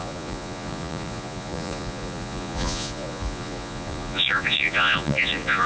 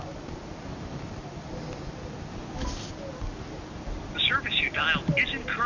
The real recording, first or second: second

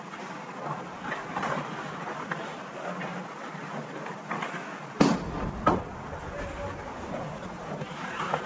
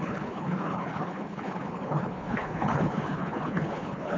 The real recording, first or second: first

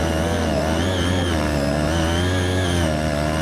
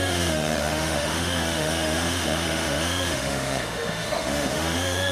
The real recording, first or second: first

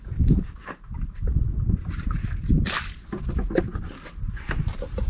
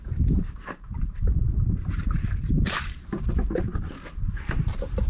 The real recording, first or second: first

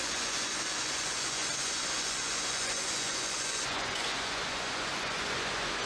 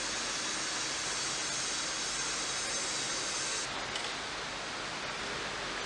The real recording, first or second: second